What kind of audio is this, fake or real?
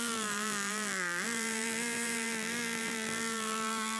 fake